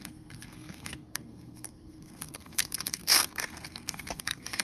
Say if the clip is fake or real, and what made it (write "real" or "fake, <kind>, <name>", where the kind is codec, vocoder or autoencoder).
fake, codec, SNAC